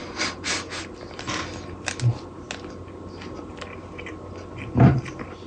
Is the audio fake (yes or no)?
no